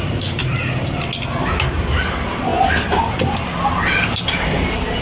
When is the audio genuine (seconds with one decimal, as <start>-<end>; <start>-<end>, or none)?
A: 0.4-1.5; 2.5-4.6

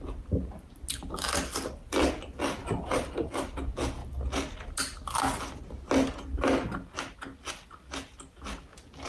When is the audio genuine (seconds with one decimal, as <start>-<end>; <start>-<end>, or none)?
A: 0.0-2.6; 3.3-9.1

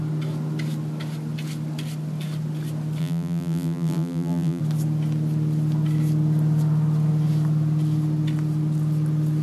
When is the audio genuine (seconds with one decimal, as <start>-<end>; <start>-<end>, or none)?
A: 0.0-3.0; 4.6-9.4